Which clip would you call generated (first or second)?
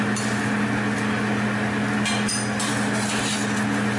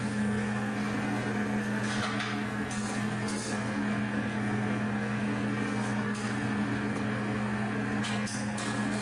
second